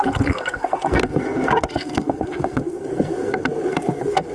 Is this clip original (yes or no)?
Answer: no